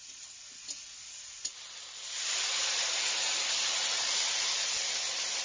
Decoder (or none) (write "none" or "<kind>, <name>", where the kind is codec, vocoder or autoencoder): none